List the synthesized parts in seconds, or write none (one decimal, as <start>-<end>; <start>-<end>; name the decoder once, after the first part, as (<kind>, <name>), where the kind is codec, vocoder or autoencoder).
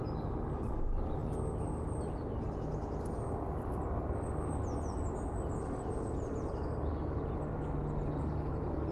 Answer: none